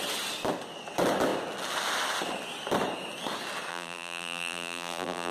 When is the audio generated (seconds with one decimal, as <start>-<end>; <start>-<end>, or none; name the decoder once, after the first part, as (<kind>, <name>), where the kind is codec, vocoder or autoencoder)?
3.7-5.3 (vocoder, BigVGAN v2)